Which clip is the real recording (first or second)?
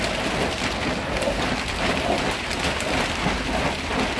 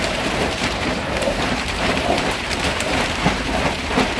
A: first